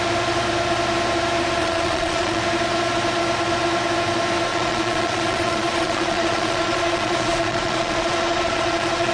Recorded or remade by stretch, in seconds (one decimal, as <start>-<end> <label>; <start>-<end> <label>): 0.0-1.6 recorded; 1.6-2.4 remade; 2.4-4.5 recorded; 4.5-9.1 remade